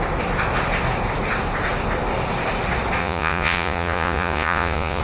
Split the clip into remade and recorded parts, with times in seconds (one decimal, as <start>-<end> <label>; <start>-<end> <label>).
0.0-3.0 recorded; 3.0-5.0 remade